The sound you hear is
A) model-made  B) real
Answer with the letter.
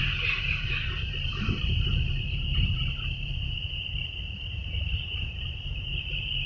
A